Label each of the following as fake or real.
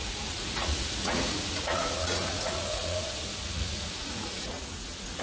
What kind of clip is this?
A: fake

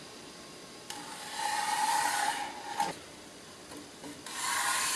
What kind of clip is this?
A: real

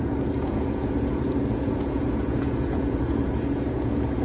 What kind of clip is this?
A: fake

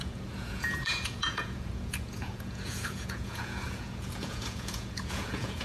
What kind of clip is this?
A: fake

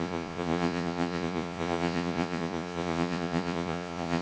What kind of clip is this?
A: fake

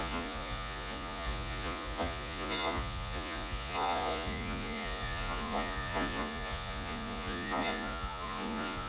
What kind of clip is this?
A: fake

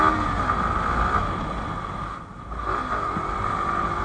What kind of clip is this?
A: real